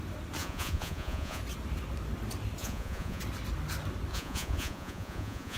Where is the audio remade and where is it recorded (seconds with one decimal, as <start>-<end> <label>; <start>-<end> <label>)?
0.0-0.4 recorded; 0.4-1.4 remade; 1.4-2.6 recorded; 2.6-3.2 remade; 3.2-4.1 recorded; 4.1-5.6 remade